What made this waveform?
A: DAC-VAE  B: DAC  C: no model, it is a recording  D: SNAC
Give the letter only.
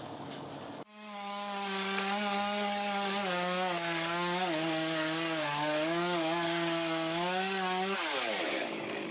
B